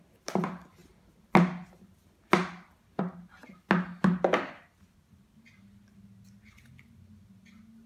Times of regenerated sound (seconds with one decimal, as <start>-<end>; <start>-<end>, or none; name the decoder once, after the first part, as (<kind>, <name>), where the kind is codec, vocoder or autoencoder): none